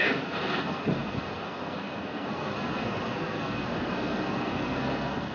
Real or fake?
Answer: fake